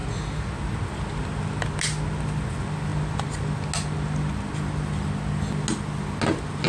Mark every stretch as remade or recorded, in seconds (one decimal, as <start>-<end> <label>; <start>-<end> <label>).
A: 0.0-6.7 recorded